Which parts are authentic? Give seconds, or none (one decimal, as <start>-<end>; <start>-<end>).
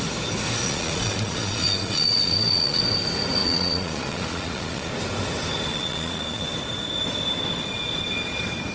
0.0-0.6; 2.8-3.4; 4.9-5.7; 6.5-8.7